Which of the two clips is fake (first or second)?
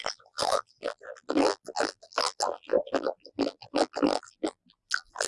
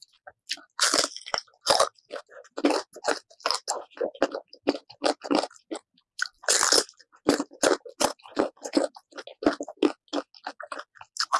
first